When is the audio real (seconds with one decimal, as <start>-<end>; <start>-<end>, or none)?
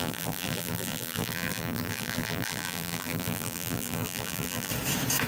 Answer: 4.7-5.3